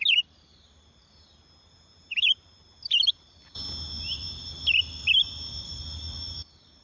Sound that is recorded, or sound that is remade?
recorded